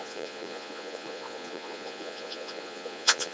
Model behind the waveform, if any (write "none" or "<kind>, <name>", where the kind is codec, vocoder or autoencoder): vocoder, Vocos